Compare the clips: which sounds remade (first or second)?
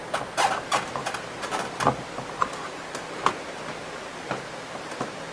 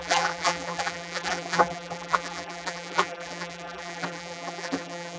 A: second